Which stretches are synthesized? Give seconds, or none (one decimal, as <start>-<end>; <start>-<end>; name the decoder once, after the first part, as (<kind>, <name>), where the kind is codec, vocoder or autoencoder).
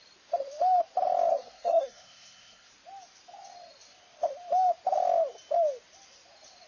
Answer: 1.3-2.7 (codec, SNAC)